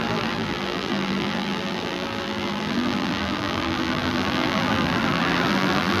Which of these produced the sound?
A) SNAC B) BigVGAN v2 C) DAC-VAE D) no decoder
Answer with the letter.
B